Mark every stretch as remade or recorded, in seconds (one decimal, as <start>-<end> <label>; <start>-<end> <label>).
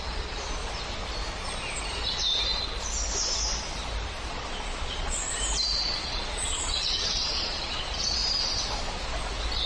0.0-0.6 remade; 0.6-4.3 recorded; 4.3-5.2 remade; 5.2-6.0 recorded; 6.0-8.2 remade; 8.2-9.7 recorded